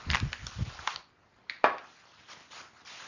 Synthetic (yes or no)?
no